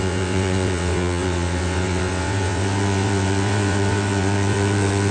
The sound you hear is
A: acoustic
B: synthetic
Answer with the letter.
B